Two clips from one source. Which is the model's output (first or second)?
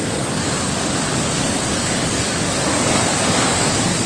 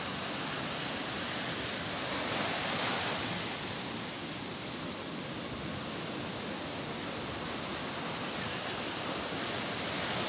first